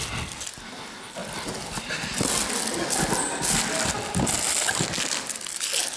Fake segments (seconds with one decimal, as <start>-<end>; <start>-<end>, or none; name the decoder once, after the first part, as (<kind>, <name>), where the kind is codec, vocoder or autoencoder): none